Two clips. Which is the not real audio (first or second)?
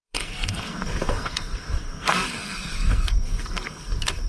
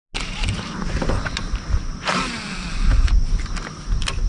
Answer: first